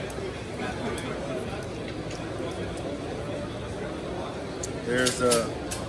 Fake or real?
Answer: real